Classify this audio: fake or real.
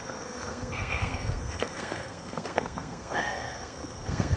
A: fake